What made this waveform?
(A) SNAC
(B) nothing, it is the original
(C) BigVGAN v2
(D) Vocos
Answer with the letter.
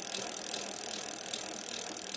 B